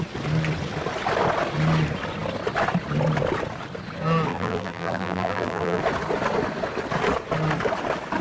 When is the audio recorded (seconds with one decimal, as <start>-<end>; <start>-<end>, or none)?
0.0-4.3; 5.8-8.2